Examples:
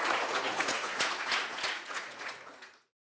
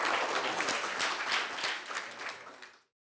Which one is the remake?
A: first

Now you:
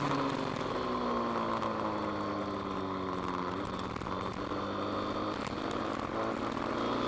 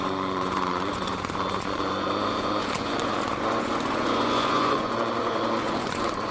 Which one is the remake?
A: second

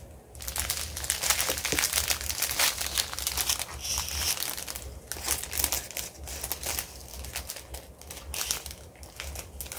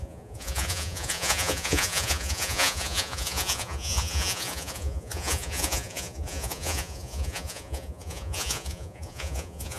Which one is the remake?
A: second